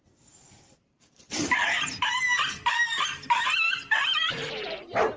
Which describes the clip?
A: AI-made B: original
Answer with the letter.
A